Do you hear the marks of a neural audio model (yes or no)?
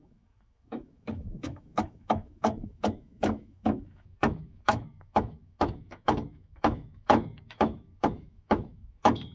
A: yes